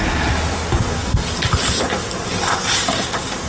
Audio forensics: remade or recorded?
recorded